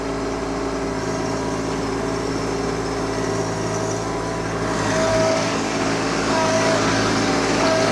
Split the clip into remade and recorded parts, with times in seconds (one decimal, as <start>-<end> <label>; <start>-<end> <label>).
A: 0.0-5.1 recorded; 5.1-7.1 remade; 7.1-7.9 recorded